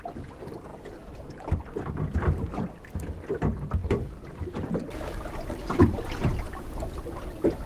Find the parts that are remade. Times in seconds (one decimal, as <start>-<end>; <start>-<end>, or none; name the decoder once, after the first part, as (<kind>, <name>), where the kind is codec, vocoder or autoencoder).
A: none